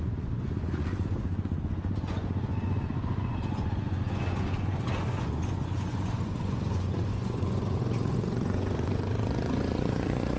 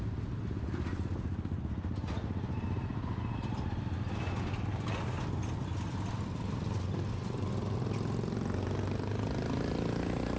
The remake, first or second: first